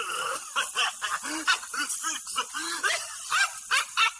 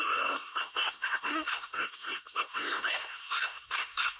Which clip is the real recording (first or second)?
first